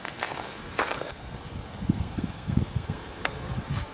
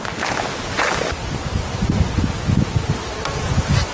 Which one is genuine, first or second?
second